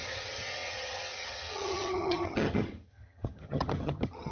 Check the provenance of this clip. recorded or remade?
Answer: remade